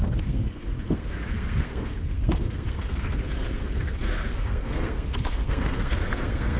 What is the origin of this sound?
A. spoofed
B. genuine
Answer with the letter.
A